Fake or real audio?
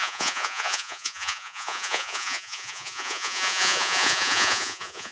fake